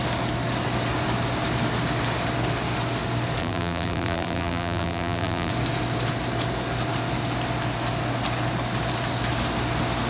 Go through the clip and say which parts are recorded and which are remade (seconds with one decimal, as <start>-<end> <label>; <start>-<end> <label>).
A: 0.0-3.4 recorded; 3.4-5.5 remade; 5.5-10.1 recorded